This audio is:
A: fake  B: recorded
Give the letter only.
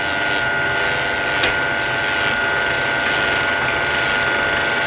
B